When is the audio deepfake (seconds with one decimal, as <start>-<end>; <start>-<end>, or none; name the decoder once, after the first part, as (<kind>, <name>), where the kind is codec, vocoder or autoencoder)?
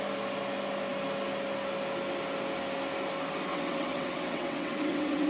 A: 3.5-5.3 (vocoder, WaveNeXt)